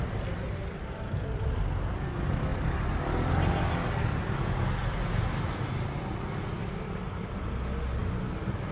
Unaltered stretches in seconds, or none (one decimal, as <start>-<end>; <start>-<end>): 0.0-8.7